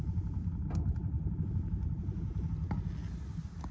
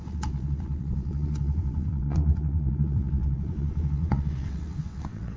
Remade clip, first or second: second